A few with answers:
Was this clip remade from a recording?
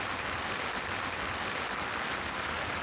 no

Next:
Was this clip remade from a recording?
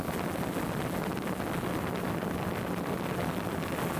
no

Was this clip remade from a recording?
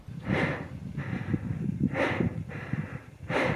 no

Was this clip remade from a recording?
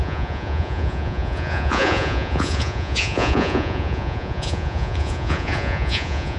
yes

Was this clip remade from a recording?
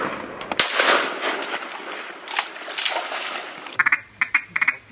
no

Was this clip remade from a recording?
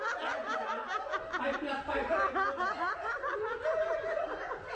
no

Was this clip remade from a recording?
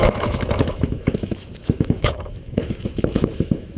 yes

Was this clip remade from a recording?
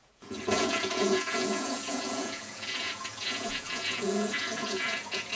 yes